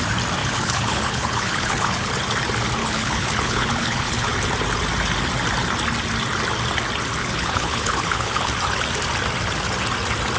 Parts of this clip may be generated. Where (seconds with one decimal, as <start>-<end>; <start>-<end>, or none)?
0.4-2.1; 2.8-4.3; 7.2-8.5